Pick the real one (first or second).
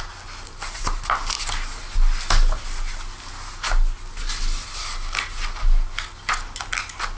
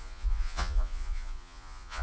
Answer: first